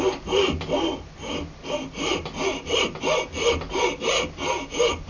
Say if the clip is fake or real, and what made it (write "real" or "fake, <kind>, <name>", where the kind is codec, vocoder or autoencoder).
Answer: real